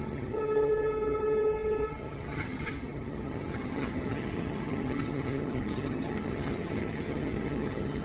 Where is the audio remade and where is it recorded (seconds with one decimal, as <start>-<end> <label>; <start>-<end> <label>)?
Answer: 0.0-8.0 remade